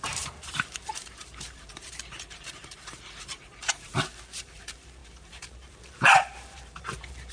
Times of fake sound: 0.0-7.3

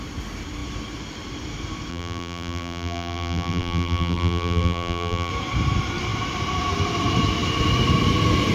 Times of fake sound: 1.9-5.3

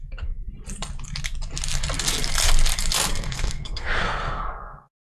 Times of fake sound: 0.0-0.4; 3.1-5.1